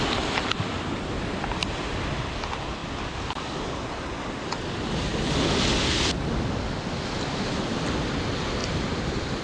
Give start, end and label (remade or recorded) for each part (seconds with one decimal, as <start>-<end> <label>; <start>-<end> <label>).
0.0-2.8 recorded; 2.8-3.9 remade; 3.9-8.6 recorded; 8.6-9.4 remade

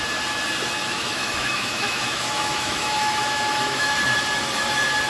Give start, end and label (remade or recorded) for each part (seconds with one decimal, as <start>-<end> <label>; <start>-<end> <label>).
0.0-0.8 recorded; 0.8-3.9 remade; 3.9-5.1 recorded

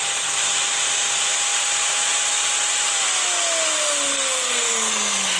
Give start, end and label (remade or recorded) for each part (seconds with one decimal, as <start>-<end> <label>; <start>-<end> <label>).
0.0-4.1 recorded; 4.1-5.4 remade

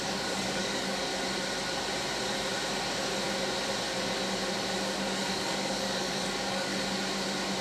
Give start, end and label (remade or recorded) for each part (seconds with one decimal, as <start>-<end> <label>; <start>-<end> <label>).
0.0-1.1 remade; 1.1-4.9 recorded; 4.9-6.7 remade; 6.7-7.6 recorded

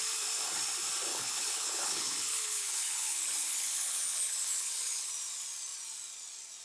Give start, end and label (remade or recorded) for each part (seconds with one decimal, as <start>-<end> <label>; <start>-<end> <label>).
0.0-1.1 recorded; 1.1-5.1 remade; 5.1-6.6 recorded

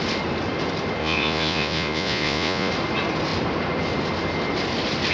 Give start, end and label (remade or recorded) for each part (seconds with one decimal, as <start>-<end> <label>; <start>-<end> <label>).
0.0-1.0 recorded; 1.0-2.7 remade; 2.7-5.1 recorded

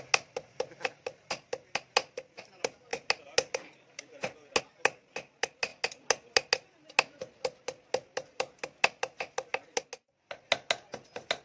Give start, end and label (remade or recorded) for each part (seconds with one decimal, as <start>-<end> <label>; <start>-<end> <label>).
0.0-11.4 recorded

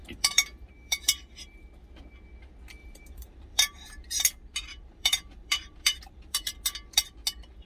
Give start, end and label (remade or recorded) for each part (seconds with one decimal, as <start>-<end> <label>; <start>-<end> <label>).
0.0-1.7 remade; 1.7-2.8 recorded; 2.8-4.2 remade; 4.2-4.7 recorded; 4.7-6.5 remade; 6.5-7.7 recorded